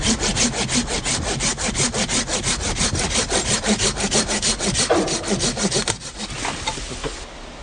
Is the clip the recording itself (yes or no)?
yes